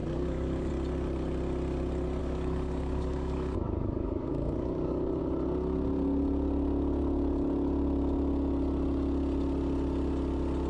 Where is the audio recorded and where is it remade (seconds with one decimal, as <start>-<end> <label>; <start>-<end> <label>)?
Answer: 0.0-0.7 remade; 0.7-2.2 recorded; 2.2-5.2 remade; 5.2-10.7 recorded